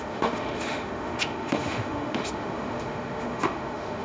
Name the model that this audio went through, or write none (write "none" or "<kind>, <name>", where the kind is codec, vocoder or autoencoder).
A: autoencoder, DAC-VAE